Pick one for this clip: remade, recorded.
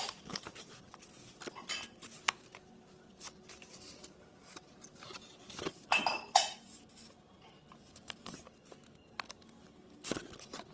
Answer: recorded